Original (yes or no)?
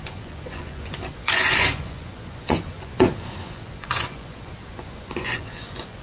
no